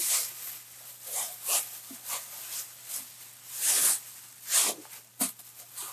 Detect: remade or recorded recorded